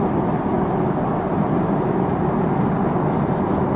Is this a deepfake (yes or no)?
no